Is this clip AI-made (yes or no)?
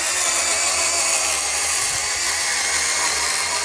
no